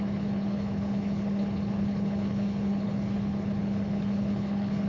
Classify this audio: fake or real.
fake